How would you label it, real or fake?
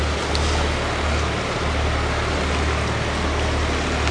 real